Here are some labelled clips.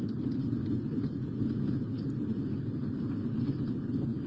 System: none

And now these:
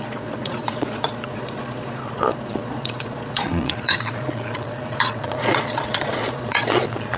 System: vocoder, Vocos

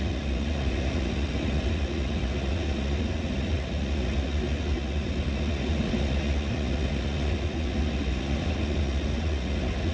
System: vocoder, Vocos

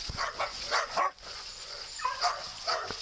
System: vocoder, Vocos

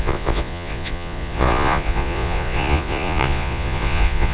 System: vocoder, Vocos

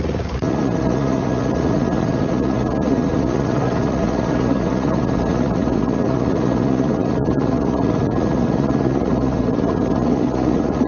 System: vocoder, Vocos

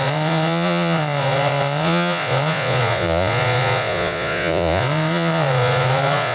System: vocoder, Vocos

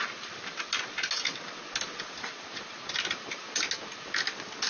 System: none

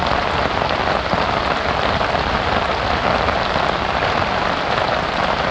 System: none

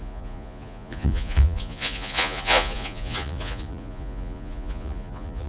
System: vocoder, Vocos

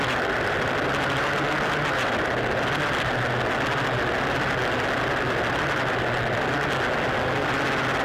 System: none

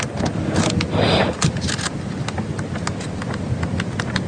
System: none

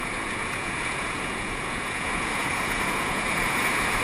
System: vocoder, Vocos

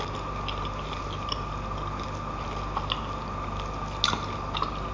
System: none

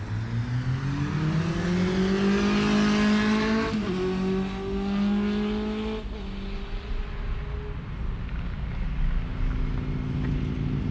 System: none